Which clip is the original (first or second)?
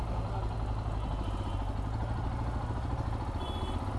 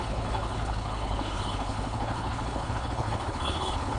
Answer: first